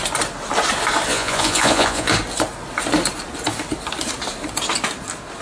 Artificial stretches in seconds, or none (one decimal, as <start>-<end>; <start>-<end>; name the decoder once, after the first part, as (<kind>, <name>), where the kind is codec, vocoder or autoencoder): 1.1-2.1 (vocoder, Vocos)